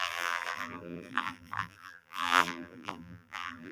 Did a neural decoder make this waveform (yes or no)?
yes